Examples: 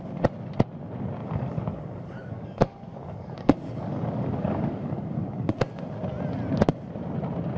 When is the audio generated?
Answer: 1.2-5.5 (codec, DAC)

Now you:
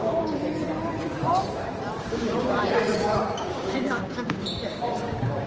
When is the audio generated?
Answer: 0.0-0.4 (codec, DAC); 2.0-5.5